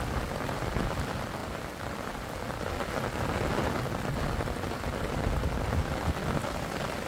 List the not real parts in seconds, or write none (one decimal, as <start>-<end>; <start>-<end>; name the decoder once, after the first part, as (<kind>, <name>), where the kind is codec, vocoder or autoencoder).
none